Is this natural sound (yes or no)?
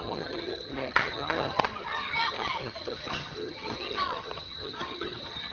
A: no